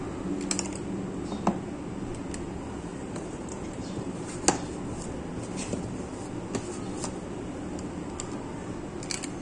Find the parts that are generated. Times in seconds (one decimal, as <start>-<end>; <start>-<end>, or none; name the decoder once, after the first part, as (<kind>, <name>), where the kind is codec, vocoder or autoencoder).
2.9-4.3 (vocoder, BigVGAN v2)